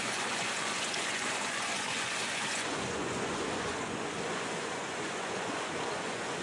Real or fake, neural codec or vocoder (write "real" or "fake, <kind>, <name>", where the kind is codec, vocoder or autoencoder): fake, vocoder, Vocos